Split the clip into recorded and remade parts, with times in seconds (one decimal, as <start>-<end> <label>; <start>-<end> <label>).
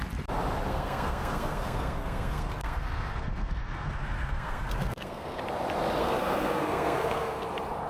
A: 0.0-0.7 recorded; 0.7-5.4 remade; 5.4-6.0 recorded; 6.0-7.4 remade; 7.4-7.9 recorded